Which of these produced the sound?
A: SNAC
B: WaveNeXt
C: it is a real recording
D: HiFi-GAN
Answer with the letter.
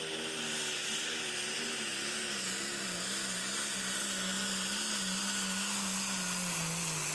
C